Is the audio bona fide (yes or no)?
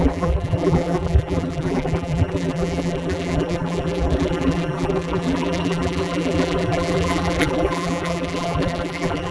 no